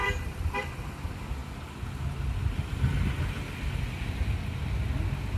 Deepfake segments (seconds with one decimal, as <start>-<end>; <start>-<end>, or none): 0.0-0.7